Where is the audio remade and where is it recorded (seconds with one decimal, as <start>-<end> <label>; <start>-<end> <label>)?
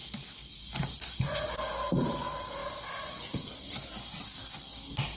0.0-2.6 remade; 2.6-5.2 recorded